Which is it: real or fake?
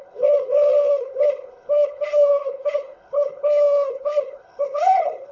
fake